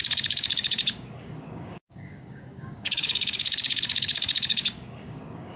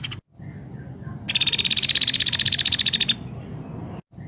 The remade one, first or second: first